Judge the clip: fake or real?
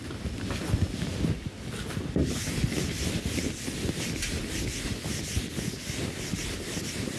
real